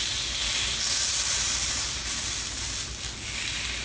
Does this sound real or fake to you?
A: real